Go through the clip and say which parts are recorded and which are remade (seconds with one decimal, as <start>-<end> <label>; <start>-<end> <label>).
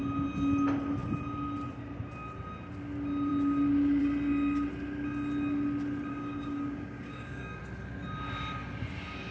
0.0-6.1 recorded; 6.1-7.6 remade; 7.6-9.3 recorded